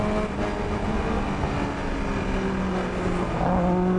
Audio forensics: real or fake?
real